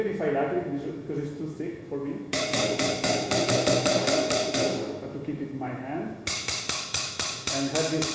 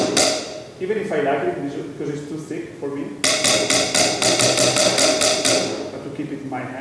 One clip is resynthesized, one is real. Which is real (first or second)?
second